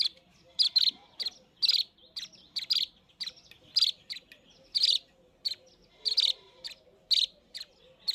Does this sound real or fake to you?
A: real